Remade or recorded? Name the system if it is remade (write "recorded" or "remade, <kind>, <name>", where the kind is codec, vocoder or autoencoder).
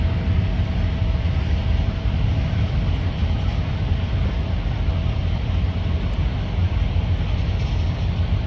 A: recorded